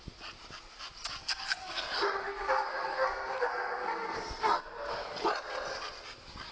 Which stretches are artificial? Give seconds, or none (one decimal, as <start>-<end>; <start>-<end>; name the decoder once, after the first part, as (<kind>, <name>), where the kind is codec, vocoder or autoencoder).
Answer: 1.2-1.8 (codec, SNAC); 2.2-4.9